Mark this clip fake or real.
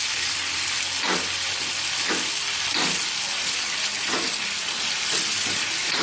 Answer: real